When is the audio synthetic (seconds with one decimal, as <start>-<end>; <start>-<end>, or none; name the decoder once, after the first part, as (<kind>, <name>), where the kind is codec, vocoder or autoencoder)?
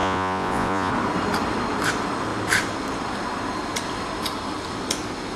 0.0-0.9 (vocoder, Vocos)